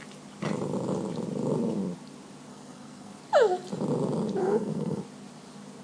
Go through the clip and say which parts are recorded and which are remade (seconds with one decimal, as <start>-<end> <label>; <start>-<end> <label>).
0.0-2.5 recorded; 2.5-3.2 remade; 3.2-4.4 recorded; 4.4-5.0 remade; 5.0-5.8 recorded